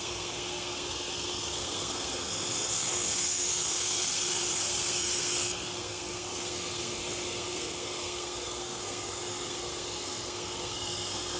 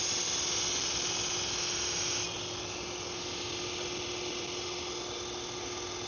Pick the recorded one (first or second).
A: second